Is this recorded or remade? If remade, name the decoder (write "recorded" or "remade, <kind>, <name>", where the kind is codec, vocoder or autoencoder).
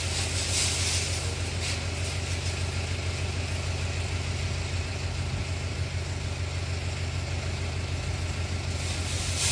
recorded